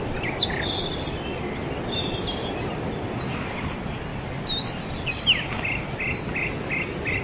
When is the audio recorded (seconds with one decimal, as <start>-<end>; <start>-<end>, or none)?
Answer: 0.0-7.2